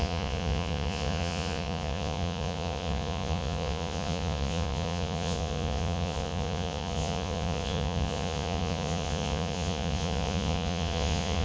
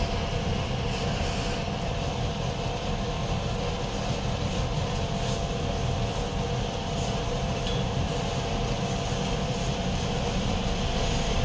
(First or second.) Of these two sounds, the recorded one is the second